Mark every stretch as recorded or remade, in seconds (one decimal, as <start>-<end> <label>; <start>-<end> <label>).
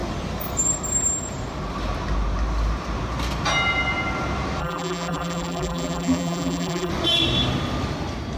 0.0-4.6 recorded; 4.6-6.9 remade; 6.9-8.4 recorded